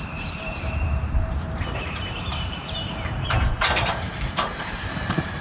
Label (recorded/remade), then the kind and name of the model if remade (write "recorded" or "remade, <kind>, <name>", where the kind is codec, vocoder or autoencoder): remade, vocoder, BigVGAN v2